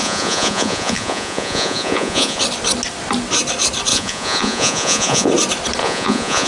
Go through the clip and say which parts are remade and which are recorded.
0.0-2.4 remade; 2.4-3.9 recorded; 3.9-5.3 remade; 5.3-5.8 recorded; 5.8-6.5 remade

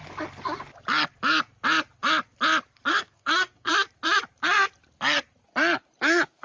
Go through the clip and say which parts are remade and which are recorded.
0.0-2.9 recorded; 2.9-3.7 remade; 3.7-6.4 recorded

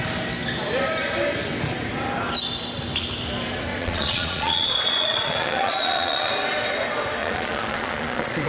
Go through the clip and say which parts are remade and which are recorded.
0.0-3.8 recorded; 3.8-6.3 remade; 6.3-7.2 recorded; 7.2-8.5 remade

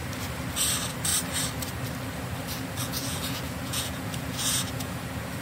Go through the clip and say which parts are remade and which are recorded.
0.0-2.8 recorded; 2.8-5.0 remade; 5.0-5.4 recorded